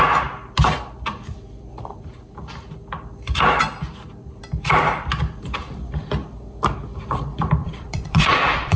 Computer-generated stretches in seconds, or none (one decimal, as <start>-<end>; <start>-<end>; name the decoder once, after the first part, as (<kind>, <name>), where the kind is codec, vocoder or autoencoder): 7.6-8.8 (vocoder, Vocos)